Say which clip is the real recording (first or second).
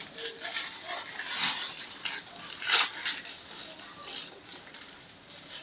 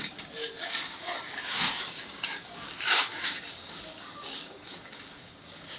first